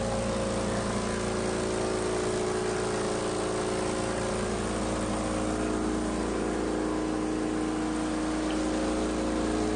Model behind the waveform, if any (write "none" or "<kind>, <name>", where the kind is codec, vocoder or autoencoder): none